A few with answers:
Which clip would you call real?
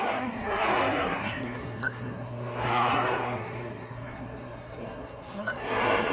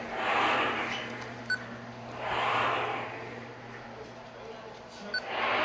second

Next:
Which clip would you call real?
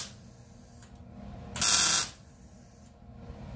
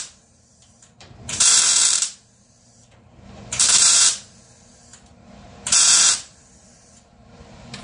first